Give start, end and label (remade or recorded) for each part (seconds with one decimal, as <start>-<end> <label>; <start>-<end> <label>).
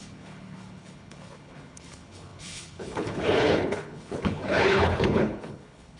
0.0-6.0 remade